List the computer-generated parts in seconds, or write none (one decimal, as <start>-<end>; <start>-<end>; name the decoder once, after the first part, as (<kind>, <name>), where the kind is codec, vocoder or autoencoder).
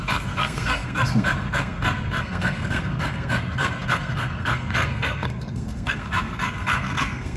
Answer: 0.0-7.4 (codec, SNAC)